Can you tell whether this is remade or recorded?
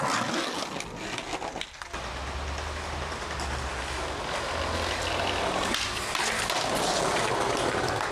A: recorded